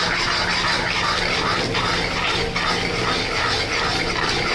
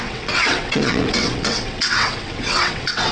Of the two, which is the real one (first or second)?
first